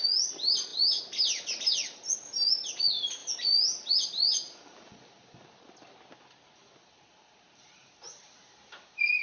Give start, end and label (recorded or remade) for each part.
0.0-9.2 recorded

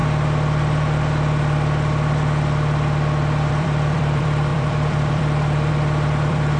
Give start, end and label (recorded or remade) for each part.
0.0-3.5 recorded; 3.5-6.6 remade